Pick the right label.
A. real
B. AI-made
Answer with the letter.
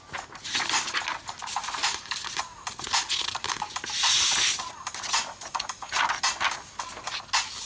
A